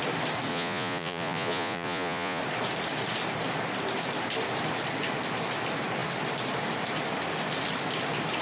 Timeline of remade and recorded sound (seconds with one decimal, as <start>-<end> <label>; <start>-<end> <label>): 0.0-0.5 recorded; 0.5-2.4 remade; 2.4-8.4 recorded